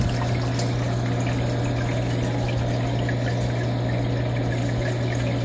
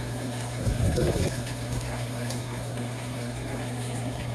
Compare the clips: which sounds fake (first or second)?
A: second